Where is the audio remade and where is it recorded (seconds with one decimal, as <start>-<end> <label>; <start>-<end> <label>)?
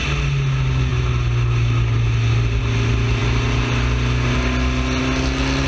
0.0-5.7 recorded